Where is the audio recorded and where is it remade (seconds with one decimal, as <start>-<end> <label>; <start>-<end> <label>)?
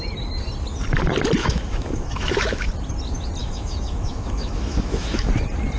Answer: 0.0-1.4 recorded; 1.4-2.7 remade; 2.7-3.4 recorded; 3.4-5.3 remade; 5.3-5.8 recorded